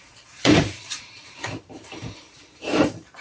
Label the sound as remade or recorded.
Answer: remade